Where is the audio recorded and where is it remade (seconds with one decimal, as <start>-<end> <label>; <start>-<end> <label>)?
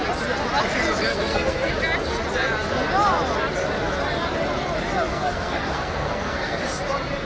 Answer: 0.0-1.1 recorded; 1.1-1.7 remade; 1.7-5.1 recorded; 5.1-6.6 remade; 6.6-7.2 recorded